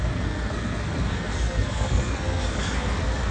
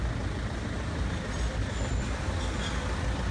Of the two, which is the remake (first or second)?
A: first